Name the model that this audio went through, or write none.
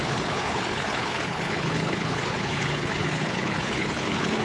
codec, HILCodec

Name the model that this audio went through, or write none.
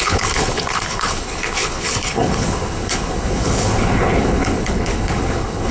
codec, HILCodec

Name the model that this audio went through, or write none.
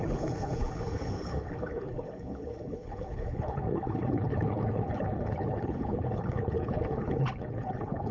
codec, HILCodec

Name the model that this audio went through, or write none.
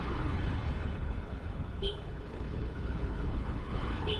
codec, HILCodec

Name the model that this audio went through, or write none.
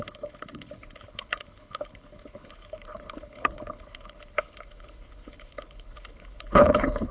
codec, HILCodec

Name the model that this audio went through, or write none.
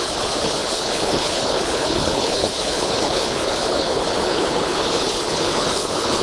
codec, HILCodec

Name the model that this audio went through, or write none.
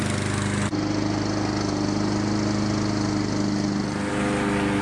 none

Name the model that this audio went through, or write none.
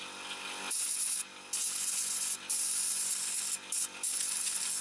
none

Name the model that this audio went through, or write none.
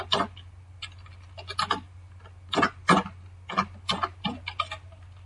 none